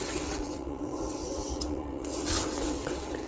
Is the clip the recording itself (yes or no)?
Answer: no